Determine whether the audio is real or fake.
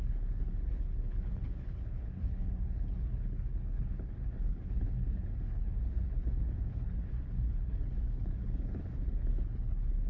fake